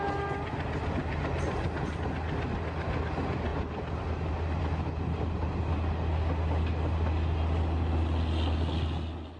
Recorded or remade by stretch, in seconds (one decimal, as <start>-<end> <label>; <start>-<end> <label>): 0.0-9.4 recorded